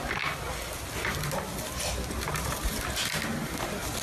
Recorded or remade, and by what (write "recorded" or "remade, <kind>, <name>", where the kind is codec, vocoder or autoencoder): recorded